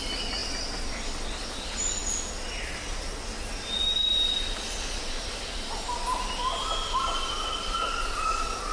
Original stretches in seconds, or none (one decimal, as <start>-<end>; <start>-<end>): 0.0-8.7